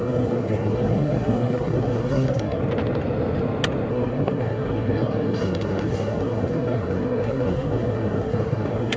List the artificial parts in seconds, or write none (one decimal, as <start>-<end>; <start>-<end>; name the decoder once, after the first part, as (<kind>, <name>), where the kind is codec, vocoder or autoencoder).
0.0-2.6 (codec, SNAC); 3.9-9.0